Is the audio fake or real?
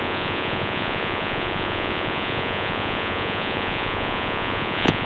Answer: fake